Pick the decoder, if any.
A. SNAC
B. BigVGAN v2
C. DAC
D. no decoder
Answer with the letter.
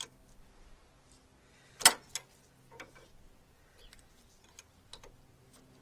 D